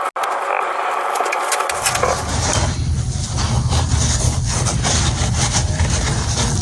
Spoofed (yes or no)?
no